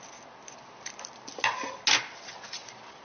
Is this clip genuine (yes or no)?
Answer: yes